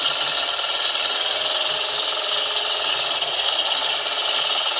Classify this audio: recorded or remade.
remade